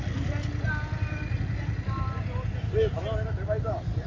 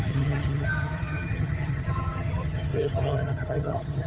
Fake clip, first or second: second